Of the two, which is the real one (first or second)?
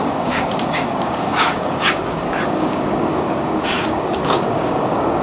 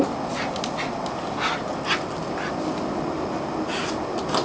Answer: second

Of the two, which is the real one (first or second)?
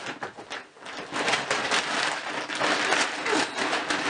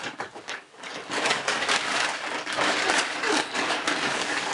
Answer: first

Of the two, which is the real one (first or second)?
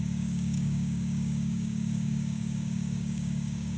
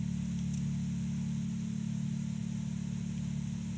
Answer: second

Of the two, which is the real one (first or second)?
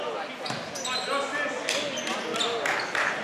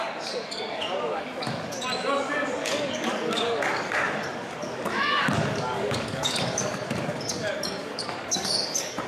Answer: first